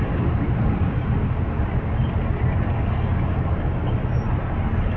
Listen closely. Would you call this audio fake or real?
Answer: real